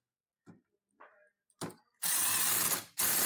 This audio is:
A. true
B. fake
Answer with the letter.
A